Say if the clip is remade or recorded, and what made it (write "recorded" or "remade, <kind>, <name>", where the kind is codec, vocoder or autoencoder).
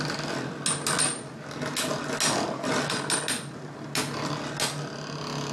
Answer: recorded